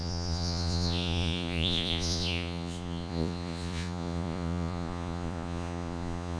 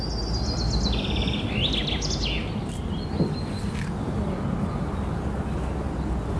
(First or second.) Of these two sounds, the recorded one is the second